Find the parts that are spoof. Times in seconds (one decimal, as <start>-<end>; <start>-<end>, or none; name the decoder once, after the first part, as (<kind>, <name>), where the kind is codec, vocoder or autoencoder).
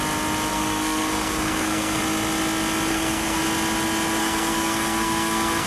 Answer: 0.5-2.0 (codec, SNAC); 2.9-3.4; 4.2-5.7